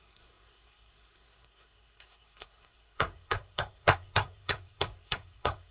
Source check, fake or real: fake